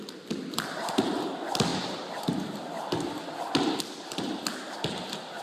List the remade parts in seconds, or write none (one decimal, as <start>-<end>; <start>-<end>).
none